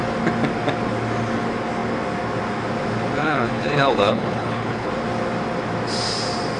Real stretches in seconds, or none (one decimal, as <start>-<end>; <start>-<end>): 0.0-3.2; 4.9-6.6